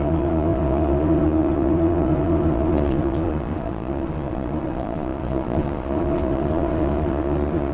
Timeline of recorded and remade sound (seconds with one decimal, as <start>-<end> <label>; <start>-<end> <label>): 0.0-7.7 remade